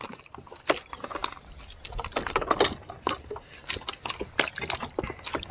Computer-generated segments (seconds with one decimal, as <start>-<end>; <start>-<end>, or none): none